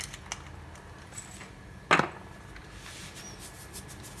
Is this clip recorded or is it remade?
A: recorded